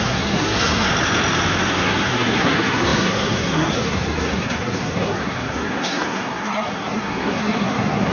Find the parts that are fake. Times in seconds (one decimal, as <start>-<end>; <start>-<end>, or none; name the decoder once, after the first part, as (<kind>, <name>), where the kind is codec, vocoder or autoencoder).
0.0-0.9 (codec, SNAC); 1.7-8.1